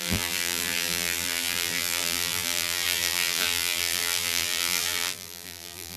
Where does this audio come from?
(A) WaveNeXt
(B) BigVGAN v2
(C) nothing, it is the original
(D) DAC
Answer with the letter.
B